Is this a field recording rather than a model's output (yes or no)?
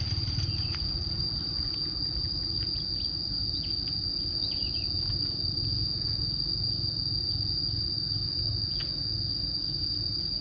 yes